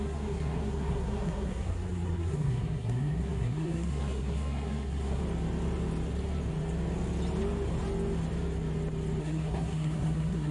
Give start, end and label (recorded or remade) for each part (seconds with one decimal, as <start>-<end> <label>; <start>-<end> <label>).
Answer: 0.0-5.2 remade; 5.2-9.2 recorded; 9.2-10.5 remade